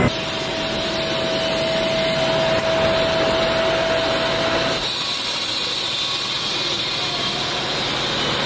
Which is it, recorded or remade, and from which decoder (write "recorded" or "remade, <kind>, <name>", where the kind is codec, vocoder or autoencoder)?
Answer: recorded